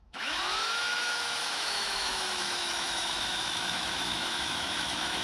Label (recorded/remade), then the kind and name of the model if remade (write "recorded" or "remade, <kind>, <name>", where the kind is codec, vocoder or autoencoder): remade, autoencoder, DAC-VAE